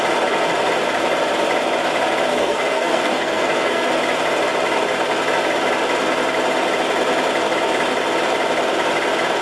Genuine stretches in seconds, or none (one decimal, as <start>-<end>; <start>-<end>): 0.0-2.3; 3.9-9.4